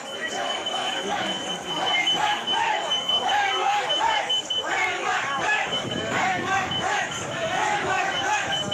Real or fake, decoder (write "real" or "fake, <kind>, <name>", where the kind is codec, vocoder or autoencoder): fake, codec, DAC